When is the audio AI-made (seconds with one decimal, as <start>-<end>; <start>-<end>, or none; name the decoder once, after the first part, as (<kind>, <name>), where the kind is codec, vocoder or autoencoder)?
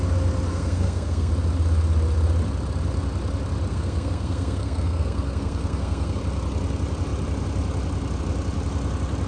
0.5-1.3 (codec, SNAC); 3.7-6.2